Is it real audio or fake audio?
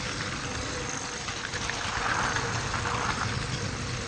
real